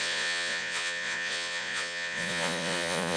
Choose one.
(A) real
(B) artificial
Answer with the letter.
B